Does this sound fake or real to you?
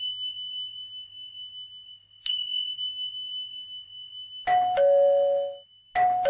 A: real